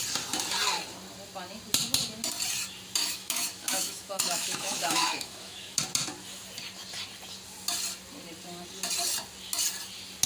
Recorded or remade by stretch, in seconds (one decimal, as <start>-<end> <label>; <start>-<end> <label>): 0.0-3.0 recorded; 3.0-5.8 remade; 5.8-10.3 recorded